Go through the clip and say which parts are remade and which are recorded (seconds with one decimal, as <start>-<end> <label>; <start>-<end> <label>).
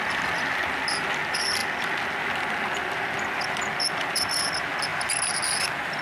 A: 0.0-6.0 recorded